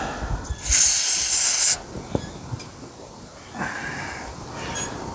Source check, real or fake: real